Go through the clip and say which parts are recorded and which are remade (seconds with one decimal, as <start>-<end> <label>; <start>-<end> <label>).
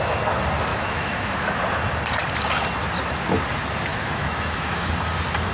0.0-0.7 recorded; 0.7-1.6 remade; 1.6-3.9 recorded; 3.9-4.9 remade; 4.9-5.5 recorded